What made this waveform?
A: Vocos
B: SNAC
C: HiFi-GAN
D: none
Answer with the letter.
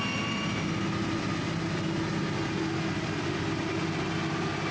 D